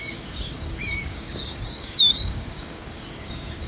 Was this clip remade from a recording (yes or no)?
yes